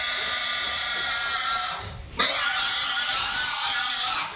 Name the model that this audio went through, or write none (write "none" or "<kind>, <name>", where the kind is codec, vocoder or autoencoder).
none